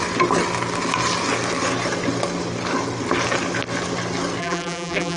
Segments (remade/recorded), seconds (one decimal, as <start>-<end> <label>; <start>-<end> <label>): 0.0-4.4 recorded; 4.4-5.2 remade